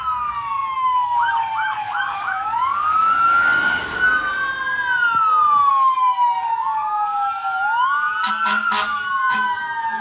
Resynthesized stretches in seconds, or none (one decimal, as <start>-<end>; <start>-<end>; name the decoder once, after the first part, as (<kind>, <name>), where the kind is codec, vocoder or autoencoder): 0.0-3.9 (codec, DAC); 5.7-10.0